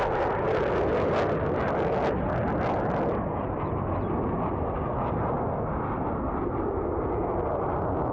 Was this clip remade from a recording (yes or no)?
no